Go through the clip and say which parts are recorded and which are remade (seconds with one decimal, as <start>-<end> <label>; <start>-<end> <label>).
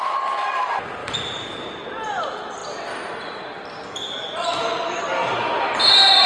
0.0-1.0 recorded; 1.0-1.5 remade; 1.5-5.2 recorded; 5.2-6.3 remade